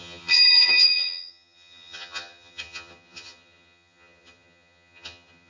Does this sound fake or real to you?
fake